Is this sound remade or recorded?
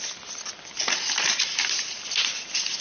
recorded